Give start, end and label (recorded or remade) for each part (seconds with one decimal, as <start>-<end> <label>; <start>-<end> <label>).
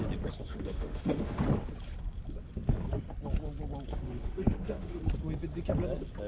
0.0-0.4 recorded; 0.4-1.4 remade; 1.4-3.9 recorded; 3.9-5.0 remade; 5.0-6.3 recorded